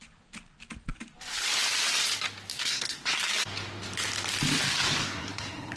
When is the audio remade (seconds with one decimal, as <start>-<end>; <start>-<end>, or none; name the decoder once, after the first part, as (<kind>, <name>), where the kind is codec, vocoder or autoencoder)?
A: 2.5-3.1 (codec, SNAC); 5.0-5.8